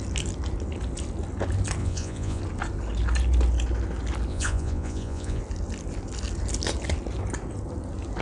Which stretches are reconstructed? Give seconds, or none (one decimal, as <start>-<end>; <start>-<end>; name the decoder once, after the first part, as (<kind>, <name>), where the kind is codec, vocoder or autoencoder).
1.8-2.4 (vocoder, Vocos); 4.3-5.4